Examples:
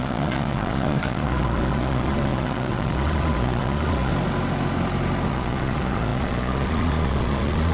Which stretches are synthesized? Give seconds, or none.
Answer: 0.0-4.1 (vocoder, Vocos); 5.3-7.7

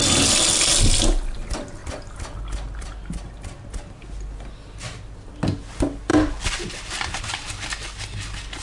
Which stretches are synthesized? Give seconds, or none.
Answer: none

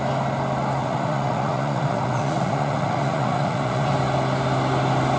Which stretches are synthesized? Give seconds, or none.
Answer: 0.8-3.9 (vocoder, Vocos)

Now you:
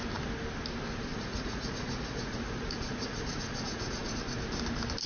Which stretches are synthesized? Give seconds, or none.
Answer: 1.1-4.2 (vocoder, Vocos)